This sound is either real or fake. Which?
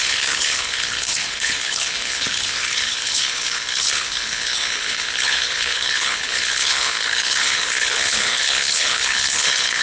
fake